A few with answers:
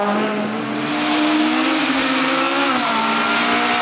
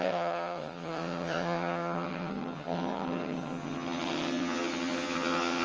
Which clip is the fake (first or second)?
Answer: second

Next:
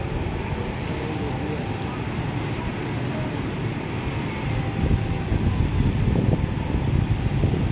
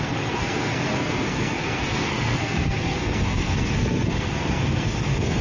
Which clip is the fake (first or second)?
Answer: second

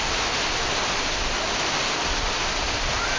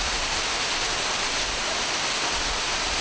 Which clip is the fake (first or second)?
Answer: first